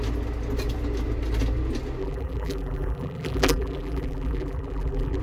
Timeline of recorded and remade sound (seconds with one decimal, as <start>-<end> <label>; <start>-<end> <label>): 0.0-2.0 recorded; 2.0-5.2 remade